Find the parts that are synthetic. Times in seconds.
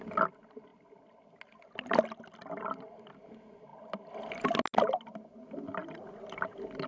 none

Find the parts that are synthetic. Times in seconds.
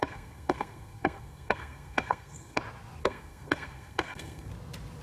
0.0-2.6 (codec, SNAC); 3.0-4.5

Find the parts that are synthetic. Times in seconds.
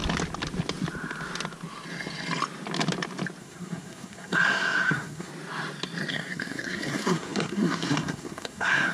3.4-5.3 (codec, SNAC); 6.1-8.9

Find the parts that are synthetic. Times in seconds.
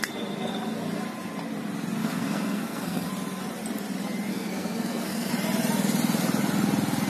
2.0-3.1 (codec, SNAC); 4.3-5.3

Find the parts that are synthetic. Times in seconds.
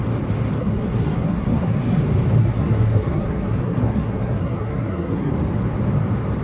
0.6-2.0 (codec, SNAC); 2.4-5.3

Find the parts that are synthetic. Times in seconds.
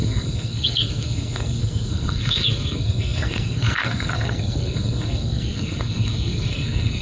0.0-7.0 (codec, SNAC)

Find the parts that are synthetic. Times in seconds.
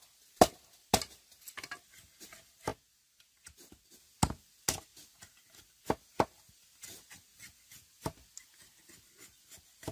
none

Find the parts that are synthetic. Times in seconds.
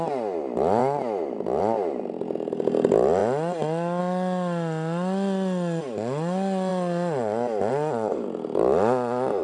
none